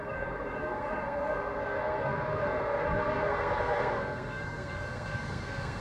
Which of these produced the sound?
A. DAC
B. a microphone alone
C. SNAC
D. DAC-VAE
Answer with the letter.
C